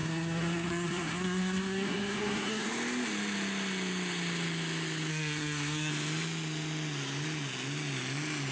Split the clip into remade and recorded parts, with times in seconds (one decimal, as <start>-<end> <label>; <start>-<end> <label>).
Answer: 0.0-2.7 remade; 2.7-5.1 recorded; 5.1-5.9 remade; 5.9-8.5 recorded

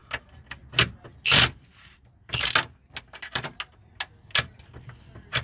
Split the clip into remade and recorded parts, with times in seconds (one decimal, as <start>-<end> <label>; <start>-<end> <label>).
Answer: 0.0-5.4 recorded

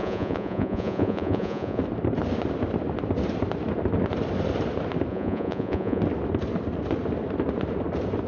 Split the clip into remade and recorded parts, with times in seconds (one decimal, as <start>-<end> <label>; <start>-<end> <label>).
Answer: 0.0-1.8 remade; 1.8-5.1 recorded; 5.1-6.0 remade; 6.0-8.3 recorded